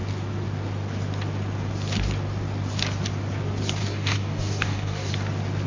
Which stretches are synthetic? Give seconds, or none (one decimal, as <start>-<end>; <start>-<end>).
3.8-5.1

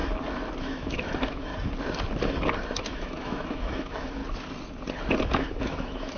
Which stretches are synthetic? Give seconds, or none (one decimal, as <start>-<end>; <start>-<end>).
0.6-1.5; 2.8-4.2; 5.2-6.2

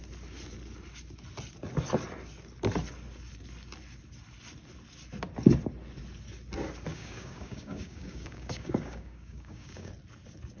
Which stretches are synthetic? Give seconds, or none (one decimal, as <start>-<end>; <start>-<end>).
6.9-9.9

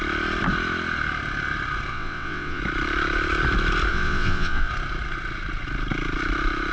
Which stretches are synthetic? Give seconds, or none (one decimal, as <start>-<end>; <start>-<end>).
1.9-2.6; 3.9-4.7